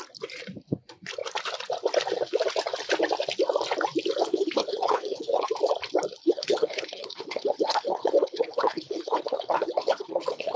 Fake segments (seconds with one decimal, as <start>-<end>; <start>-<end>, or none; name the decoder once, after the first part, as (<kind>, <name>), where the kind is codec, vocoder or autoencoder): 4.2-5.5 (codec, HILCodec); 6.2-10.6